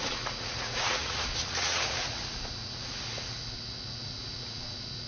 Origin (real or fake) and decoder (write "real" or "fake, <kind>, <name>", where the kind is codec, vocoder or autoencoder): fake, vocoder, Vocos